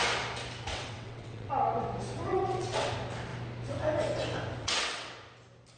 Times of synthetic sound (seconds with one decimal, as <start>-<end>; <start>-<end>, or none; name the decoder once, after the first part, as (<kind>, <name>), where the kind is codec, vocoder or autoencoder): 0.7-1.5 (vocoder, WaveNeXt); 2.3-2.9; 4.6-5.1